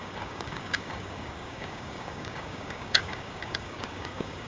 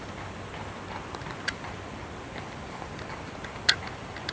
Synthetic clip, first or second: first